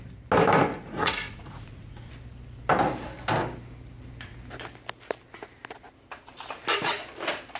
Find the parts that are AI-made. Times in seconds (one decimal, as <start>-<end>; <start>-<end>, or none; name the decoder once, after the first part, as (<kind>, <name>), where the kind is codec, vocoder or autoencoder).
0.7-2.1 (vocoder, Vocos)